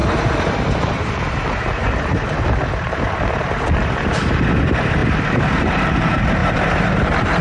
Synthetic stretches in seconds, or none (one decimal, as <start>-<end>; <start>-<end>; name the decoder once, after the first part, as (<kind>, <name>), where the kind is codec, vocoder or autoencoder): 6.4-7.4 (vocoder, BigVGAN v2)